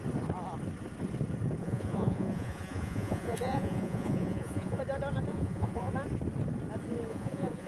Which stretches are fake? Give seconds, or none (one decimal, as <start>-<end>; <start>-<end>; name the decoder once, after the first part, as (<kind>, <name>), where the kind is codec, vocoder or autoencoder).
1.6-4.8 (vocoder, Vocos); 5.3-5.9; 7.1-7.7